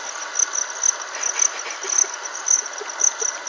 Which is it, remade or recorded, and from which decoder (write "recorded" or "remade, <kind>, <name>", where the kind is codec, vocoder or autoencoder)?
recorded